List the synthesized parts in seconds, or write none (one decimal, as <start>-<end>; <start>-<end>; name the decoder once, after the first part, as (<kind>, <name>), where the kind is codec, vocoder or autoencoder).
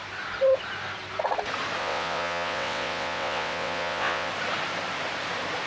1.8-4.3 (vocoder, WaveNeXt)